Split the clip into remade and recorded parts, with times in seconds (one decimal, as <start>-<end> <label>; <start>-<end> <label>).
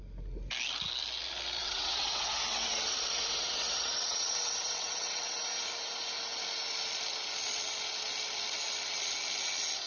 0.0-1.6 recorded; 1.6-5.4 remade; 5.4-9.9 recorded